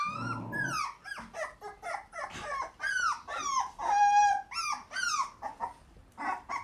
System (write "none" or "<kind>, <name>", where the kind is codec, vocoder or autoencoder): none